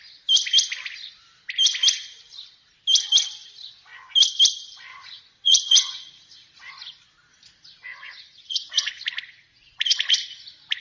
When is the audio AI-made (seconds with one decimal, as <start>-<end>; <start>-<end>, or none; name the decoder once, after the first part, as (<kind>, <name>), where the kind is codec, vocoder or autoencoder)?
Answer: 4.9-6.7 (vocoder, Vocos); 7.3-8.9